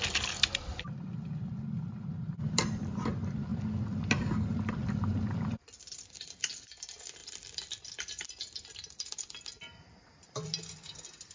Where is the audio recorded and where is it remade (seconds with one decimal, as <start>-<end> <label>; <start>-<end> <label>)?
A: 0.0-3.5 remade; 3.5-4.7 recorded; 4.7-11.3 remade